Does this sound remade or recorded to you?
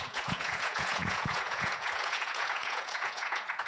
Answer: remade